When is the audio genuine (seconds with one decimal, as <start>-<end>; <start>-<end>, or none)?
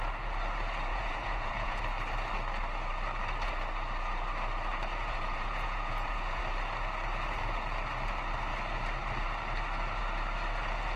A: 0.0-0.9; 1.8-4.9; 6.4-11.0